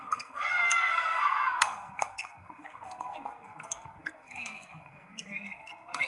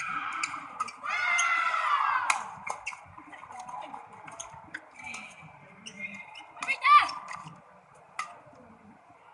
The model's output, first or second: first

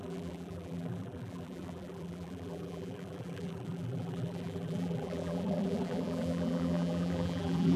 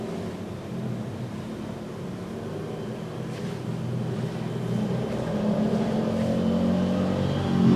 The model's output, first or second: first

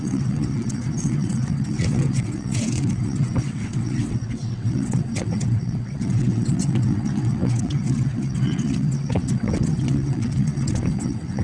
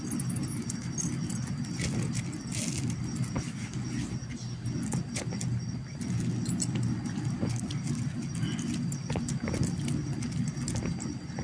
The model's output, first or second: first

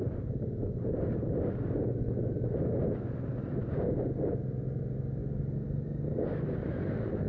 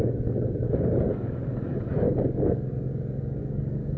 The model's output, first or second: second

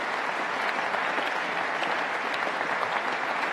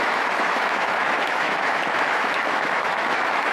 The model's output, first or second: second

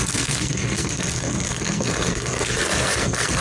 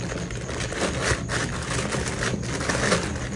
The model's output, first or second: first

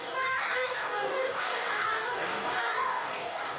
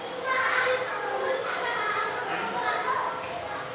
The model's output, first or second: first